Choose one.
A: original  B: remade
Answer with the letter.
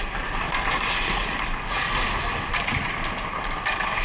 A